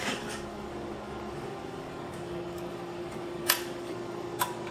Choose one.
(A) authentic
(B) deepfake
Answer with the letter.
B